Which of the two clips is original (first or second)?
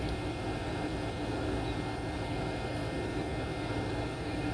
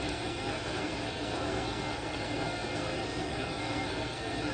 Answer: first